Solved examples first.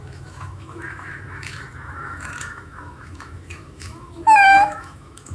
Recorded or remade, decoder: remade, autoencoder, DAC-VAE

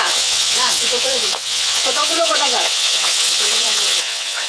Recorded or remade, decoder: remade, vocoder, WaveNeXt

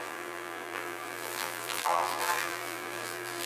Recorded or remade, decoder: remade, vocoder, BigVGAN v2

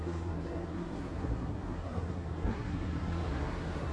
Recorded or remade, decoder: remade, codec, SNAC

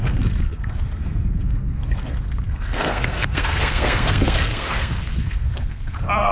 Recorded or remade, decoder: remade, codec, SNAC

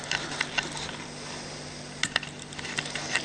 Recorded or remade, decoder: recorded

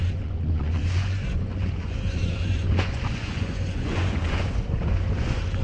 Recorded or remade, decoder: remade, vocoder, Vocos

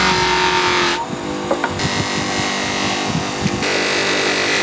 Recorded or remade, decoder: recorded